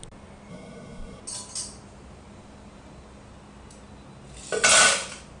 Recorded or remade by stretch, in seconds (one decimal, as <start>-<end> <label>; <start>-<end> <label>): 0.0-0.5 recorded; 0.5-1.2 remade; 1.2-5.4 recorded